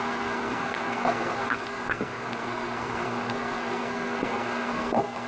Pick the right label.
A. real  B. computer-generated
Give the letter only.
B